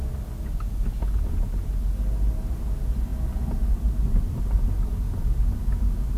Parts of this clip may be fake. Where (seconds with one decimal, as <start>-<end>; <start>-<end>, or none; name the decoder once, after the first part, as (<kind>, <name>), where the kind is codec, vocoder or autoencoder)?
none